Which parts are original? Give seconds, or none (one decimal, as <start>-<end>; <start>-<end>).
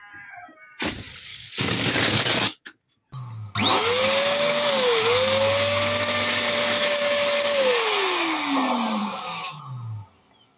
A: 0.0-1.3; 2.8-3.7; 8.0-9.0; 9.6-10.6